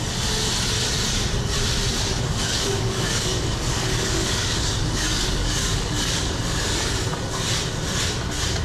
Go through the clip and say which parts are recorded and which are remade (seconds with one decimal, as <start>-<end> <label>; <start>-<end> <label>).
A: 0.0-2.1 recorded; 2.1-6.3 remade; 6.3-8.6 recorded